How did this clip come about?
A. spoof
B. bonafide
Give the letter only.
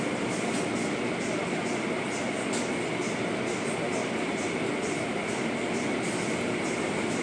B